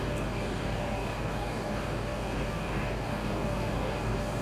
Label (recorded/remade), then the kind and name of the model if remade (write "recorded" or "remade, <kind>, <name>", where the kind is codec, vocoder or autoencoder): remade, codec, DAC